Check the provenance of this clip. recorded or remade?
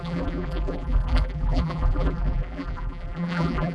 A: remade